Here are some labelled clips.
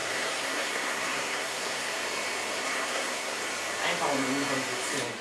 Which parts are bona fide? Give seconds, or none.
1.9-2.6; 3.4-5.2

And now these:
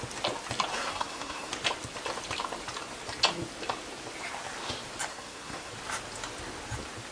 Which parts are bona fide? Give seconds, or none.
0.0-0.7; 1.5-5.1; 5.7-7.1

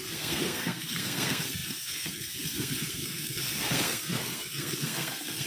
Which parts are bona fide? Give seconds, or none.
none

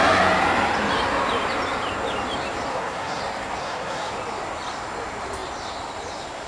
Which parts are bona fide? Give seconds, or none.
0.0-2.7; 3.2-3.6; 4.1-6.5

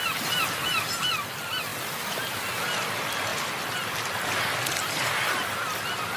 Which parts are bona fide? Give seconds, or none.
0.0-6.2

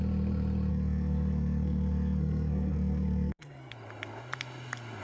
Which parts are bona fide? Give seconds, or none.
0.0-0.7; 3.7-5.0

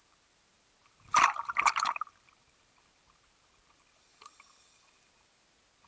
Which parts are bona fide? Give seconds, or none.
0.0-5.9